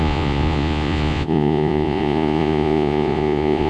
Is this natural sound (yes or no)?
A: no